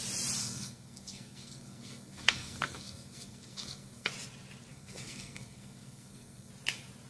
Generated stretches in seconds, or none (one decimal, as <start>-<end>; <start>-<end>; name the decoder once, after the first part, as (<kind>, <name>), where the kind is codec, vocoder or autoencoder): 0.4-4.1 (codec, SNAC); 4.7-6.5